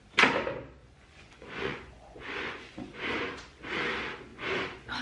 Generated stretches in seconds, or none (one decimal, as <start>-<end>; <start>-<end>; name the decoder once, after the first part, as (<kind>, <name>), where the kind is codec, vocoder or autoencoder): 0.8-3.8 (vocoder, Vocos); 4.3-5.0